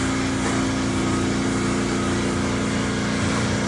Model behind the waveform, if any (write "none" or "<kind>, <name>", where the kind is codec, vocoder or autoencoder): none